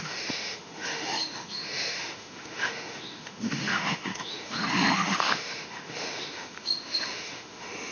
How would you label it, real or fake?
fake